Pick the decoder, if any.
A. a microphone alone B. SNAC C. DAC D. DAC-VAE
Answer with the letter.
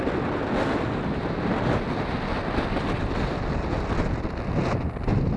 A